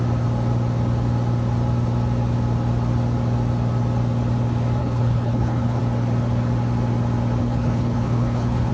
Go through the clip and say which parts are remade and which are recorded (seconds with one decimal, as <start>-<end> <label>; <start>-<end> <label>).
0.0-4.8 recorded; 4.8-5.8 remade; 5.8-7.4 recorded; 7.4-8.7 remade